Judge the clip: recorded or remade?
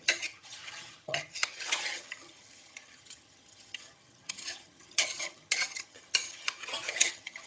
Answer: remade